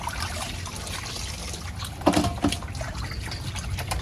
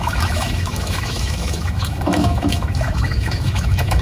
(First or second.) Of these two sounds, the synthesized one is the second